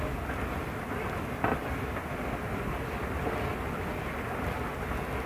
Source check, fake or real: real